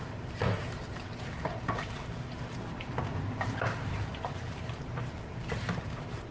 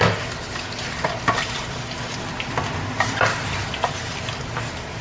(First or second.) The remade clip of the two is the first